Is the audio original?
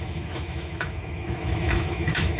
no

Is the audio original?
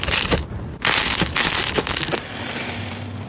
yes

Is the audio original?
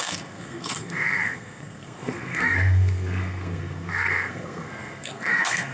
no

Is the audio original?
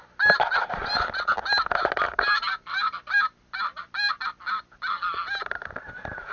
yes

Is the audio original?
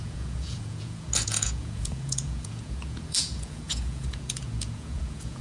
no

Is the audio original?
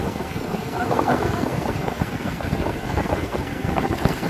no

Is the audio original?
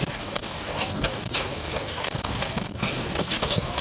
no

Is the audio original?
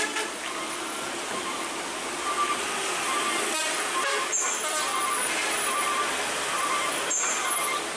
yes